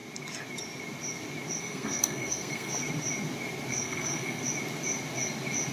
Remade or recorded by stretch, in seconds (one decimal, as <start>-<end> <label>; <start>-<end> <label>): 0.0-1.6 recorded; 1.6-2.7 remade; 2.7-3.7 recorded; 3.7-4.4 remade; 4.4-5.7 recorded